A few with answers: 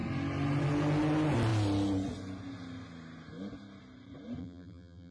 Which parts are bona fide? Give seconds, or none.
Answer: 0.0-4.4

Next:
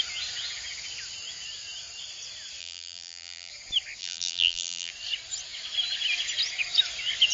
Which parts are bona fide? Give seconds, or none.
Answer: 0.0-2.6; 3.5-4.0; 4.9-7.3